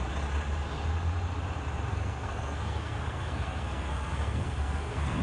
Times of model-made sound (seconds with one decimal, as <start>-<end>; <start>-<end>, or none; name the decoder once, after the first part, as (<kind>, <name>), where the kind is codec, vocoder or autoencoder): 1.9-5.2 (codec, SNAC)